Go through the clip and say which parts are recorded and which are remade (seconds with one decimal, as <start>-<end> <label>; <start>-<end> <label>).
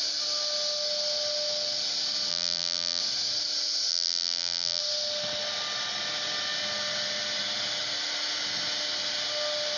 0.0-2.3 recorded; 2.3-3.0 remade; 3.0-3.9 recorded; 3.9-4.8 remade; 4.8-9.8 recorded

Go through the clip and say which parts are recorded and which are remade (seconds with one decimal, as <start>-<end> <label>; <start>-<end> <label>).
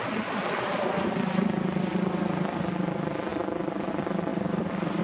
0.0-5.0 recorded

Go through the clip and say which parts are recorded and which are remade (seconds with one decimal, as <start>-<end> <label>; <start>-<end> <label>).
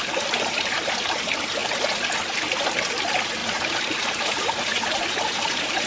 0.0-3.4 recorded; 3.4-5.9 remade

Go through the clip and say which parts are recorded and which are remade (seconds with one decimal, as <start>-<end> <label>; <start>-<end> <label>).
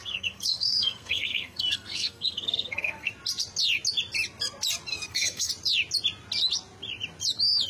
0.0-3.1 remade; 3.1-4.9 recorded; 4.9-5.5 remade; 5.5-7.7 recorded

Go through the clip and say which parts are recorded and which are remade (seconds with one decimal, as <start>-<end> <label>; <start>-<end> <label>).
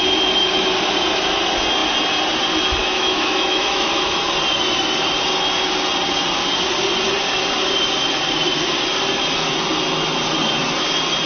0.0-2.8 recorded; 2.8-4.2 remade; 4.2-11.3 recorded